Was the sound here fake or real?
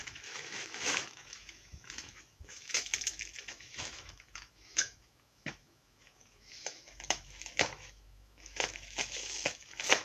fake